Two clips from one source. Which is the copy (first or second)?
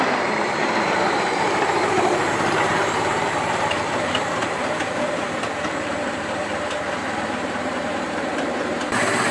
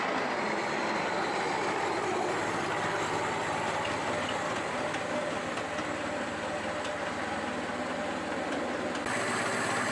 first